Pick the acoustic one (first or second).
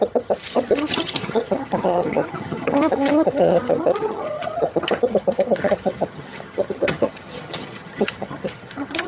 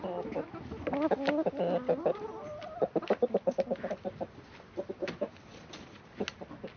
second